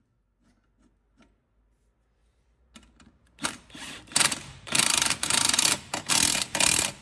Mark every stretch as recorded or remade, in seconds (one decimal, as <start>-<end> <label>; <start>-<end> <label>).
0.0-2.2 recorded; 2.2-6.1 remade; 6.1-7.0 recorded